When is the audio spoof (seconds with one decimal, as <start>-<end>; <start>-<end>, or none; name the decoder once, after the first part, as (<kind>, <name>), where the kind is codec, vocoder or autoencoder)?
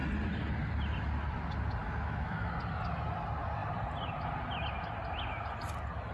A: 1.8-2.5 (autoencoder, DAC-VAE)